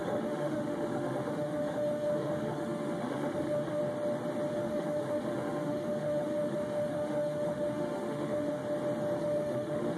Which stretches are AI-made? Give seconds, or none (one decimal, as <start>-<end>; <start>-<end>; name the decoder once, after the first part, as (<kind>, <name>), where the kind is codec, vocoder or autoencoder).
0.0-3.8 (autoencoder, DAC-VAE); 4.5-8.6; 9.2-10.0